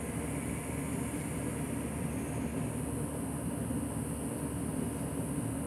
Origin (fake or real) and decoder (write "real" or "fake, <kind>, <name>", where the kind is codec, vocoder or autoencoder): real